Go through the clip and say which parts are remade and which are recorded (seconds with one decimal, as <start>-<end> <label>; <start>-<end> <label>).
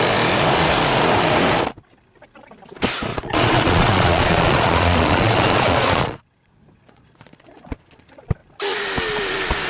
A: 0.0-3.1 recorded; 3.1-8.0 remade; 8.0-9.7 recorded